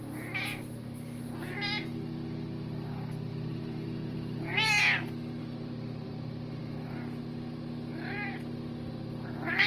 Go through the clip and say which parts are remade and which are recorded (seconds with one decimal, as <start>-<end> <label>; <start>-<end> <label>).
0.0-3.3 recorded; 3.3-4.8 remade; 4.8-5.4 recorded; 5.4-6.6 remade; 6.6-9.7 recorded